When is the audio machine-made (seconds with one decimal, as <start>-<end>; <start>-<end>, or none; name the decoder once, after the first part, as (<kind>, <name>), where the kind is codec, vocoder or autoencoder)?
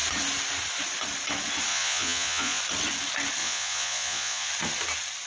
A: 1.7-2.6 (vocoder, Vocos); 3.4-4.5